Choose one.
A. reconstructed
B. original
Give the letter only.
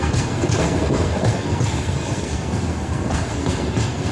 A